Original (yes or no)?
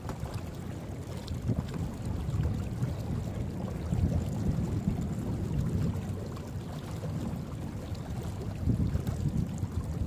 yes